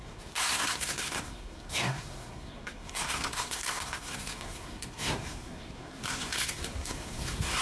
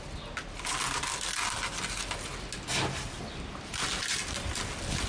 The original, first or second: second